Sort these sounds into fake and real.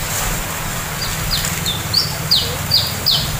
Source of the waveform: real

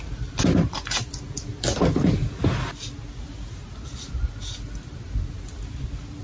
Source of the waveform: real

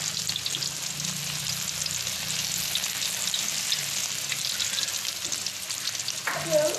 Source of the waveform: real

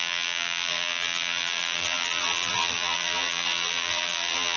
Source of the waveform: fake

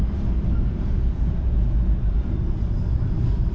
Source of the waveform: real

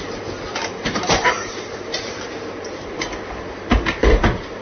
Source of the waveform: fake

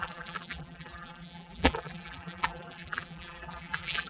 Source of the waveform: fake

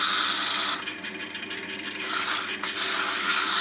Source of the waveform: real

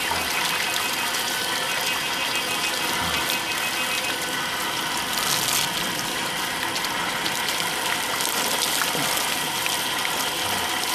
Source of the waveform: real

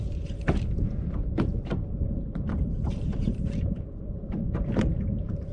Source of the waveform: fake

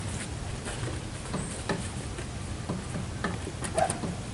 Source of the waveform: fake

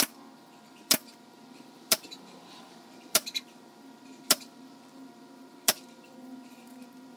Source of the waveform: fake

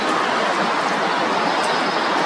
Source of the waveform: real